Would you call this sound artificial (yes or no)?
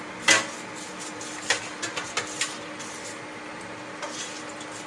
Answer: no